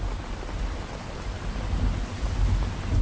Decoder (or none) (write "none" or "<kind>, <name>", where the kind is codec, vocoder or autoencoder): none